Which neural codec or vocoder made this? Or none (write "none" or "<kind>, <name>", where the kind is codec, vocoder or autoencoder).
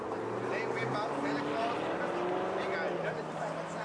none